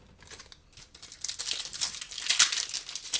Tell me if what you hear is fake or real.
real